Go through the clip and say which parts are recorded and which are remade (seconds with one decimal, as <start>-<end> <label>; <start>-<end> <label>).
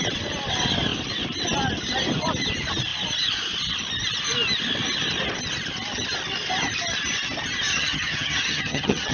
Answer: 0.0-7.7 recorded; 7.7-9.1 remade